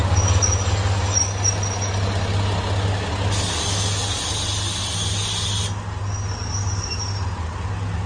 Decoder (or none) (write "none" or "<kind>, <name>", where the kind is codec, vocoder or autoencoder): none